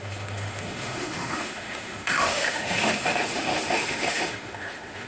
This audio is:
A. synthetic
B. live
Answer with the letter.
A